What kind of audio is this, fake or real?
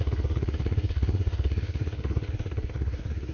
fake